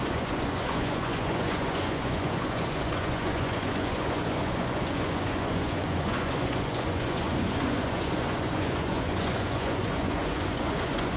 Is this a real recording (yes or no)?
no